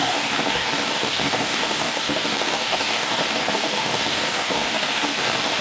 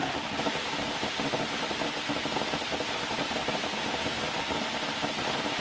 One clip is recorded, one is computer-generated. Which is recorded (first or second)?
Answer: second